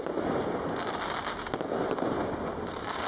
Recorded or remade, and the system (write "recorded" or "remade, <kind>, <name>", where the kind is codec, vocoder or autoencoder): recorded